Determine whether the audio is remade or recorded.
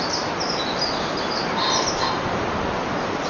recorded